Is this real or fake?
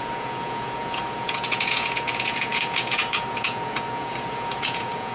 fake